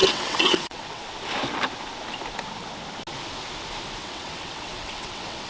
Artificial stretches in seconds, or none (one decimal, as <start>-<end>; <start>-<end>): 0.0-1.0; 4.0-5.5